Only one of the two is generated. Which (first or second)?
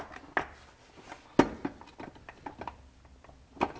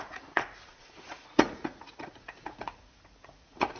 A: second